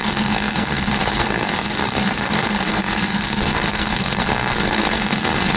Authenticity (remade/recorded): remade